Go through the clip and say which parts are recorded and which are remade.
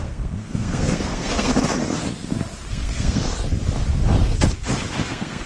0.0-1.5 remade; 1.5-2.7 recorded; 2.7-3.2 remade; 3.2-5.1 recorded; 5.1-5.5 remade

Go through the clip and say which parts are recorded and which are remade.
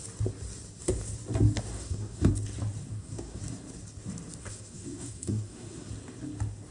0.0-1.7 recorded; 1.7-2.3 remade; 2.3-2.9 recorded; 2.9-3.4 remade; 3.4-4.4 recorded; 4.4-5.9 remade; 5.9-6.7 recorded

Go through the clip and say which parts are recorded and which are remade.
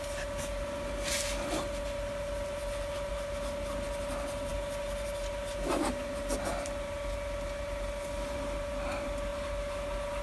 0.0-10.2 recorded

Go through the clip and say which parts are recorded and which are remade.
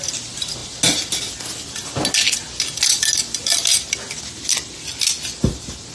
0.0-5.9 recorded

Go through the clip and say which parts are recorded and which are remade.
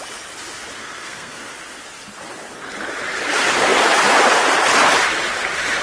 0.0-0.8 recorded; 0.8-1.4 remade; 1.4-5.8 recorded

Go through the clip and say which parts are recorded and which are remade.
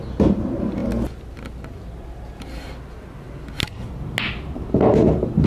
0.0-5.5 recorded